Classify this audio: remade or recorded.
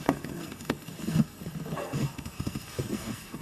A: remade